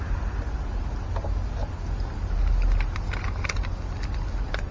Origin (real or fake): real